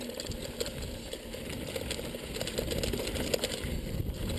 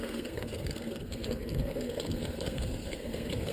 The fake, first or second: second